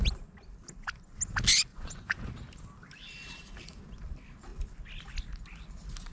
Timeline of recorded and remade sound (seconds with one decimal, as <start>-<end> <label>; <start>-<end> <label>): 0.0-1.7 recorded; 1.7-2.3 remade; 2.3-6.1 recorded